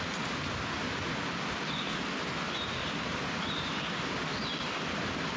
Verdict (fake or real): real